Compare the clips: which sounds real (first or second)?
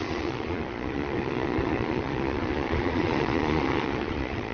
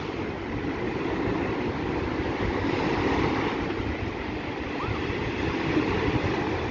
second